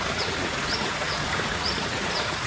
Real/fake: fake